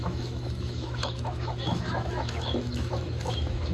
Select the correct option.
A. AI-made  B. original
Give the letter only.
A